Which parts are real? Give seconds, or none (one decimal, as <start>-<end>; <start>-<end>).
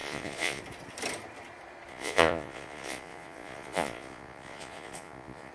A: 0.6-1.9